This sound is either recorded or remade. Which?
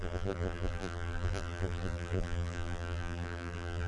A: remade